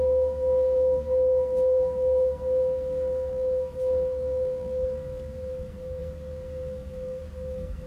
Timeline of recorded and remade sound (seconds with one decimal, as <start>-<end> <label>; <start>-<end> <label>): 0.0-7.9 remade